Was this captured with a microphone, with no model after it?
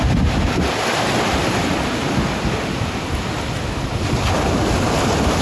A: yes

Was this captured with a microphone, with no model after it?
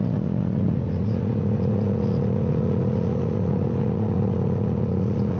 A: no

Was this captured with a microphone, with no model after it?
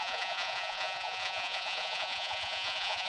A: no